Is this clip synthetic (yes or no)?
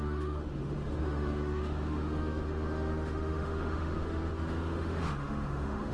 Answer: yes